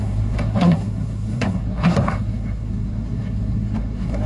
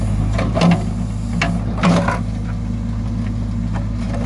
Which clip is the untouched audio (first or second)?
second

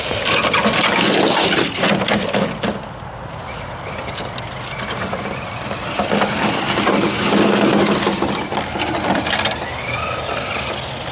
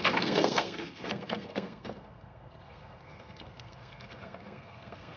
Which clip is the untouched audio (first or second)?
first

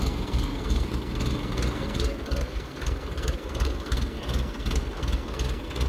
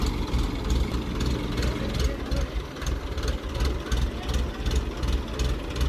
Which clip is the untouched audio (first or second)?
second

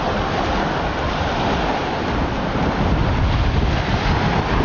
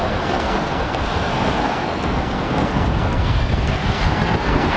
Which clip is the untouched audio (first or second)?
first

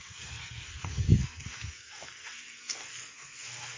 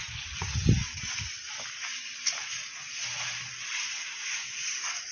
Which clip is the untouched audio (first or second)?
second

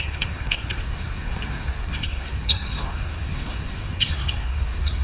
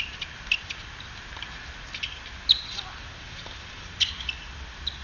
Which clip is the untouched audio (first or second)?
second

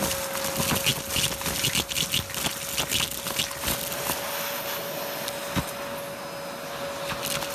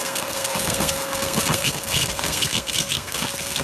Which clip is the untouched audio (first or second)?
first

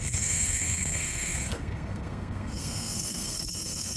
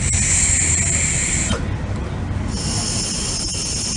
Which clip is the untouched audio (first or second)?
second